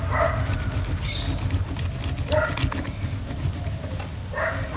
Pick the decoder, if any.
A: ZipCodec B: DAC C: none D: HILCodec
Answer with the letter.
C